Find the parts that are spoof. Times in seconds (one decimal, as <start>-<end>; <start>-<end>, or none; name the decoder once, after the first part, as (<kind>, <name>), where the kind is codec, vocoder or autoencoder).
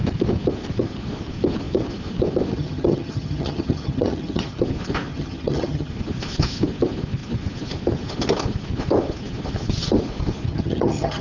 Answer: 2.5-4.6 (vocoder, HiFi-GAN); 5.1-5.9; 10.5-11.2